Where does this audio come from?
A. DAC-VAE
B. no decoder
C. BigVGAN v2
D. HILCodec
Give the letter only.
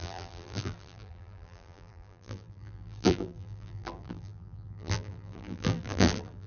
C